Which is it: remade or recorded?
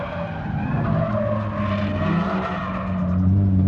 recorded